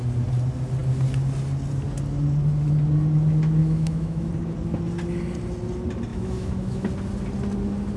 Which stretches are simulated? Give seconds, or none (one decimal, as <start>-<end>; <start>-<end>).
3.6-4.3; 6.1-6.9